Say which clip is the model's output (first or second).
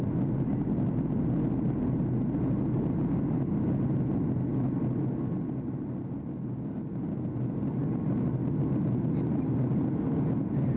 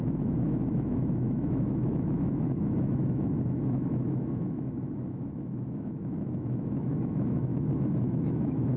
second